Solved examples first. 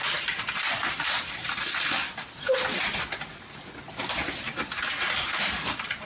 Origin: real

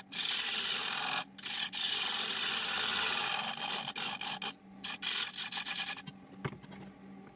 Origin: real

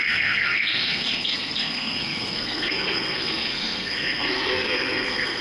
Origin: fake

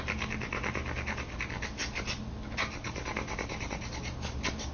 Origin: real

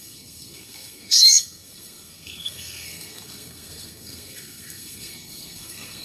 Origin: fake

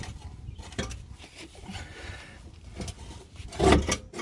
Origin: real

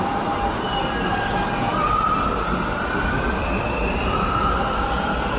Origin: real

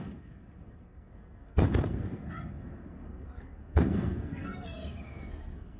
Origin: fake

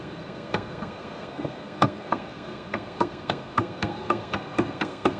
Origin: fake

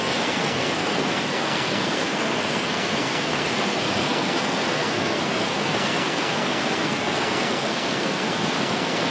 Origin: fake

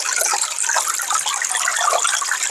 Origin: real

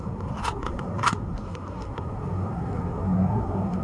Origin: fake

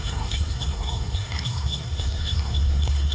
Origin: fake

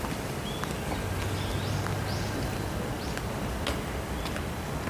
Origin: real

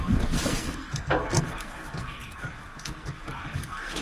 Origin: fake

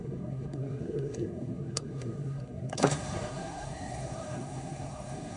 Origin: fake